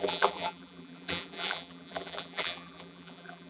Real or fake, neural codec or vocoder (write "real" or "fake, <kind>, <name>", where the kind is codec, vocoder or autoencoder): fake, vocoder, BigVGAN v2